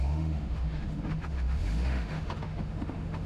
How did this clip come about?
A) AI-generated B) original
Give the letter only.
A